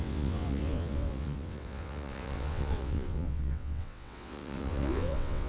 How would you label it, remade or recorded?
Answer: remade